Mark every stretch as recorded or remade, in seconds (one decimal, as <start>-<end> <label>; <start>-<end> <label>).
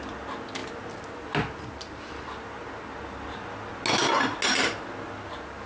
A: 0.0-5.7 recorded